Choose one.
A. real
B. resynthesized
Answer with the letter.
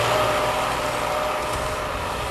A